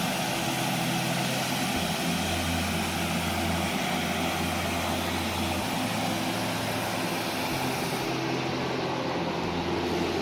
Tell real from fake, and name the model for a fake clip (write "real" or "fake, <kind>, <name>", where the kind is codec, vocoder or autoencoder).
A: real